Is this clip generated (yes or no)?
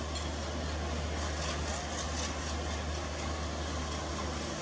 no